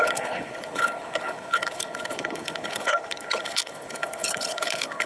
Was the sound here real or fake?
fake